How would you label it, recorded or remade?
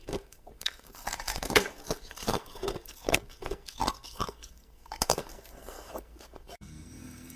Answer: remade